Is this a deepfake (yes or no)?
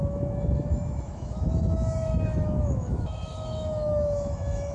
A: yes